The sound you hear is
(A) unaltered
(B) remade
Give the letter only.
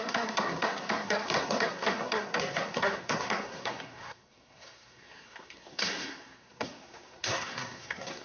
B